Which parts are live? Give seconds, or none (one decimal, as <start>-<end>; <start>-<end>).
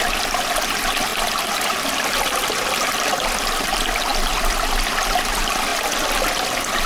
0.0-6.9